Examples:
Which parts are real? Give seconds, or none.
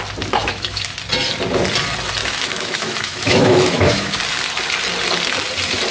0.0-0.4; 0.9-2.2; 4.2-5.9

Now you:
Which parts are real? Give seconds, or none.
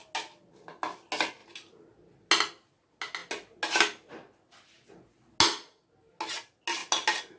0.0-7.4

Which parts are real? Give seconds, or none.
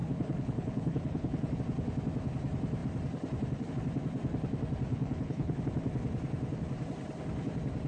1.6-4.9; 5.6-7.9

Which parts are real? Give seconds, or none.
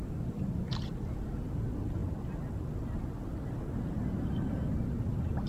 0.0-5.5